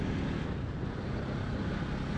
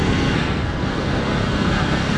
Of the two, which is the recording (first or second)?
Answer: first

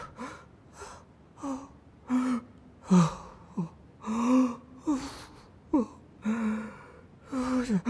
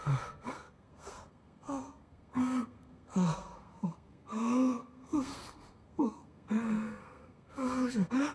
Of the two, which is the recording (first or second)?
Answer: first